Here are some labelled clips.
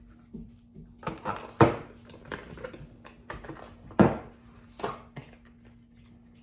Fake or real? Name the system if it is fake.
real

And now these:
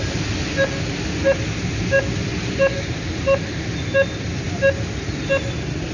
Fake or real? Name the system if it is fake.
real